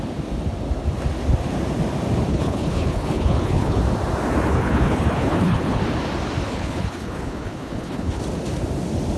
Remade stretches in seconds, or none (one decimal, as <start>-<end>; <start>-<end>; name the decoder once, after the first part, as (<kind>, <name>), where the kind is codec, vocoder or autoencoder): 2.3-3.8 (codec, HILCodec); 4.5-5.8; 6.4-8.2